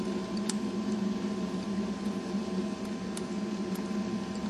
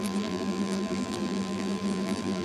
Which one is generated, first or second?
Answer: second